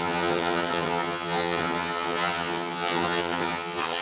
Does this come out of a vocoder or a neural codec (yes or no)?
yes